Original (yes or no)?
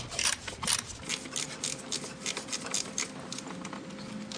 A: yes